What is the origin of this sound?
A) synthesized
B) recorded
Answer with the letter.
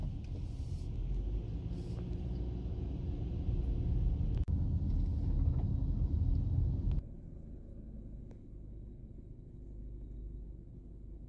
B